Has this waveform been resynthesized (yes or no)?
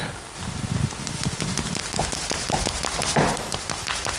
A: no